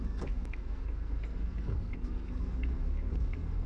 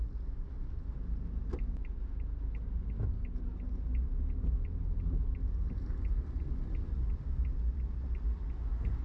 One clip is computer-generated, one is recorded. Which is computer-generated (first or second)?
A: first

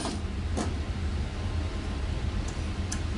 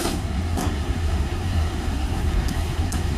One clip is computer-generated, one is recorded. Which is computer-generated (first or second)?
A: second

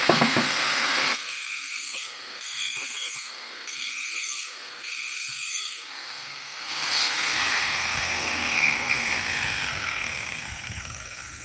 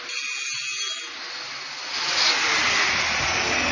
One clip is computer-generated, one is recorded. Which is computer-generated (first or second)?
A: first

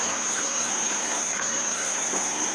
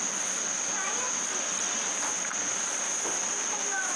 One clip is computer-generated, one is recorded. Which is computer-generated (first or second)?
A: first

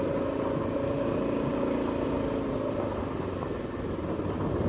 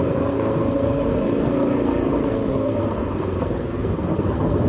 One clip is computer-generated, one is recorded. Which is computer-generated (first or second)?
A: second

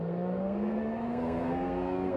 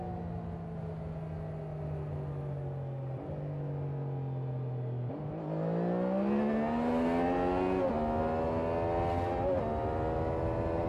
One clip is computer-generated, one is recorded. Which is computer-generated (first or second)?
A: first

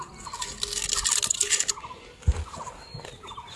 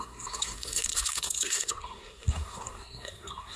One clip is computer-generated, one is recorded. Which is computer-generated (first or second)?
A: second